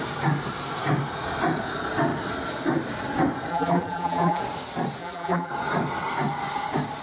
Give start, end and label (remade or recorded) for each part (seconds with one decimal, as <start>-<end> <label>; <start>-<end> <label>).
0.0-3.5 recorded; 3.5-4.4 remade; 4.4-5.0 recorded; 5.0-5.5 remade; 5.5-7.0 recorded